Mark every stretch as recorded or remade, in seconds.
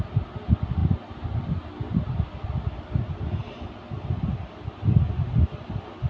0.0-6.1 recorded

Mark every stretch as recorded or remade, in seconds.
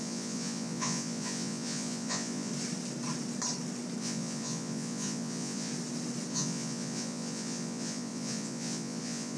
0.0-2.5 remade; 2.5-4.0 recorded; 4.0-5.7 remade; 5.7-6.3 recorded; 6.3-9.4 remade